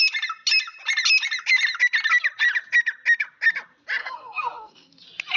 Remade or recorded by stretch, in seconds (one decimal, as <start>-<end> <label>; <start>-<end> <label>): 0.0-4.0 recorded; 4.0-4.9 remade; 4.9-5.4 recorded